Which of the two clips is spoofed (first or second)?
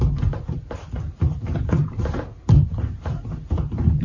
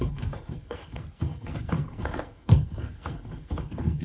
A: second